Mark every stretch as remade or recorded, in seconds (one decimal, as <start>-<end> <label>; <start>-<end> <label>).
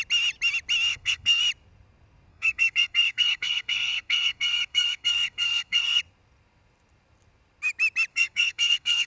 0.0-0.9 recorded; 0.9-1.4 remade; 1.4-2.3 recorded; 2.3-6.0 remade; 6.0-8.1 recorded; 8.1-9.1 remade